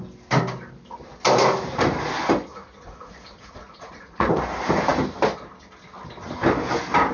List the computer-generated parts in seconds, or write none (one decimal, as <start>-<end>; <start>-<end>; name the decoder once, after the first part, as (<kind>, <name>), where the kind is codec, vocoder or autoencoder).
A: 2.5-4.3 (vocoder, Vocos)